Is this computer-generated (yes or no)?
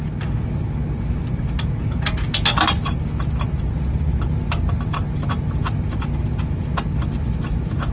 no